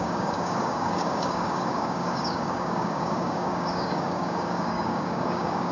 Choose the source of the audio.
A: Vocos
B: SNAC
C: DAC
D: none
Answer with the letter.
C